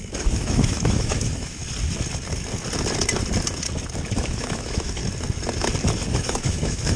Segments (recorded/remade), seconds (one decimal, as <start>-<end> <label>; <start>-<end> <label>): 0.0-1.6 remade; 1.6-4.1 recorded; 4.1-5.0 remade; 5.0-6.1 recorded; 6.1-7.0 remade